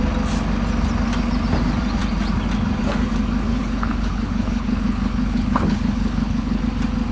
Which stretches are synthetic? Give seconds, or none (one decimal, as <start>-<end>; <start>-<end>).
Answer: 3.5-6.6